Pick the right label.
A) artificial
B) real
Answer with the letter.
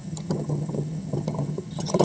A